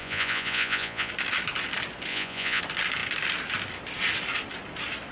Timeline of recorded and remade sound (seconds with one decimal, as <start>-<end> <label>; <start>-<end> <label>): 0.0-1.1 remade; 1.1-2.1 recorded; 2.1-2.6 remade; 2.6-5.1 recorded